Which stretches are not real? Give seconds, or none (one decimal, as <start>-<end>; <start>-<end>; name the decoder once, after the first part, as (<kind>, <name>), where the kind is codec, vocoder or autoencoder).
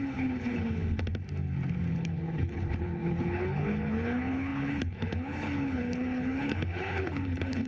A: 0.0-1.1 (codec, HILCodec); 1.9-7.7